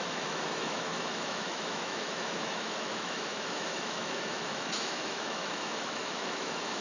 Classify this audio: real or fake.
fake